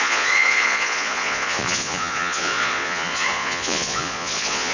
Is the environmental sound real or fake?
fake